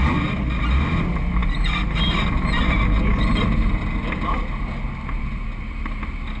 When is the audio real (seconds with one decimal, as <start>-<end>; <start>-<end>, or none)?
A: 0.0-6.4